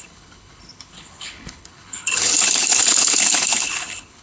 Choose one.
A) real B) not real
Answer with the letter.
B